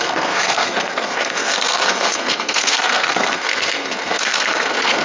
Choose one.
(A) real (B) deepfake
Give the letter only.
B